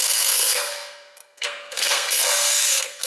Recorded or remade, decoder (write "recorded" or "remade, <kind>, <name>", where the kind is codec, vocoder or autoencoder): remade, codec, SNAC